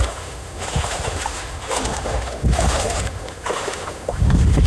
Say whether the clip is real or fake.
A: fake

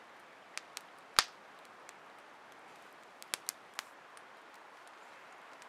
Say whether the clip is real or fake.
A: real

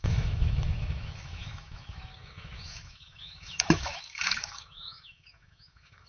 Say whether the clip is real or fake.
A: fake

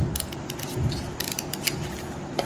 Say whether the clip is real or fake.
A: real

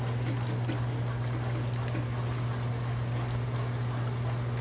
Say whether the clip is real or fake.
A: real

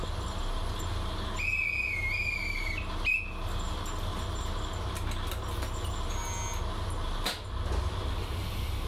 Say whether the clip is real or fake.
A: real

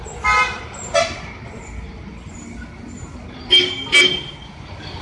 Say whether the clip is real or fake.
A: real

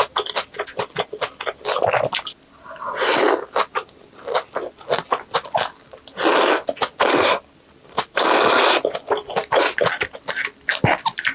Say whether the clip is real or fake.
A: real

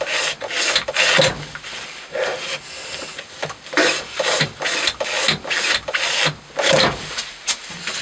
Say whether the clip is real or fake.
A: real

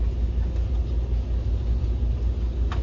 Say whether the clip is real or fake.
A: real